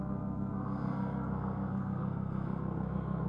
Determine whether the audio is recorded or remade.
remade